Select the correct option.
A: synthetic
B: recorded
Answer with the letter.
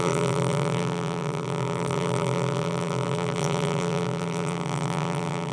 A